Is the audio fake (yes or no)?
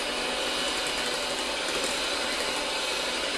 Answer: no